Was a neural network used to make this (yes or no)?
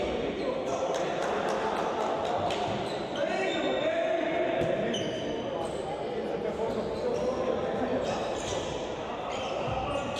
no